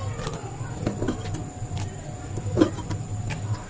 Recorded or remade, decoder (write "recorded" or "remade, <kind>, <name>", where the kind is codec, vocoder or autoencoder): recorded